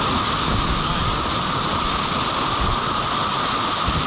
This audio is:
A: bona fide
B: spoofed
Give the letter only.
A